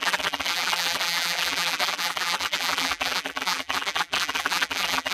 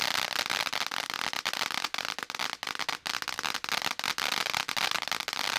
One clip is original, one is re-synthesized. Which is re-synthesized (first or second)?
first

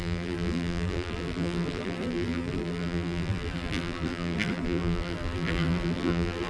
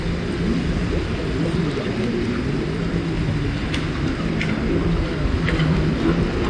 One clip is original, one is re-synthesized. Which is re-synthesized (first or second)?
first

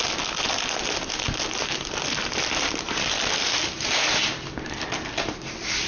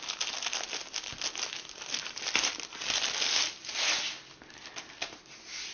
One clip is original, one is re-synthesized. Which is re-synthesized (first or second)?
first